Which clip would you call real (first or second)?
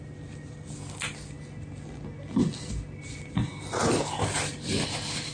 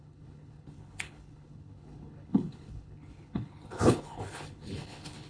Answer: first